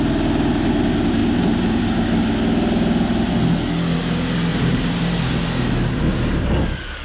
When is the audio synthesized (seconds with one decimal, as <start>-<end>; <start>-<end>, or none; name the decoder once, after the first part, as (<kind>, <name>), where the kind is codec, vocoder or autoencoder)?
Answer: 4.5-5.2 (vocoder, BigVGAN v2)